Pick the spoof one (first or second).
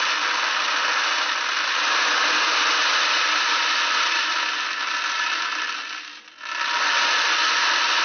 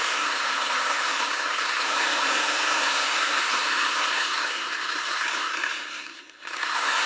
second